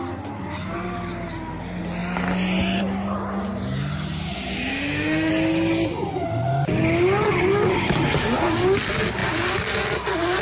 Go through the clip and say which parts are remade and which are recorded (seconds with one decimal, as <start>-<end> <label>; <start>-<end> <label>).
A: 0.0-4.7 recorded; 4.7-5.3 remade; 5.3-10.4 recorded

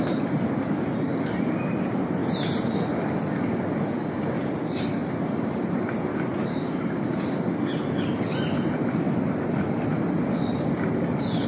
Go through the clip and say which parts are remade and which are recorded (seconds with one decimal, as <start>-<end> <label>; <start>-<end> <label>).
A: 0.0-11.5 recorded